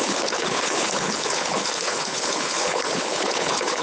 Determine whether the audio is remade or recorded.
remade